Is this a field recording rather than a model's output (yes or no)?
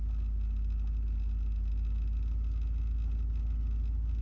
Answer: yes